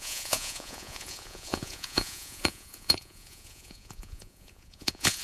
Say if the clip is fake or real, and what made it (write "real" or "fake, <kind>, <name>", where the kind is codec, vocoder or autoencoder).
fake, vocoder, Vocos